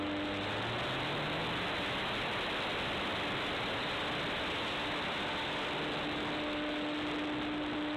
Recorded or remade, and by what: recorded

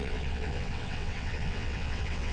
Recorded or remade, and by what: remade, vocoder, WaveNeXt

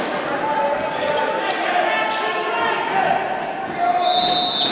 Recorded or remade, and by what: recorded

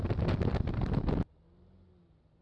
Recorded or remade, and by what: recorded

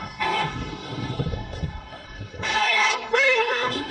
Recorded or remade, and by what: remade, codec, SNAC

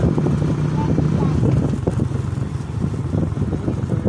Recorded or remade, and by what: recorded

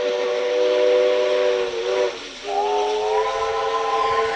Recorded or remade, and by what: recorded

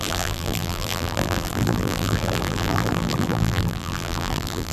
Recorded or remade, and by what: remade, vocoder, BigVGAN v2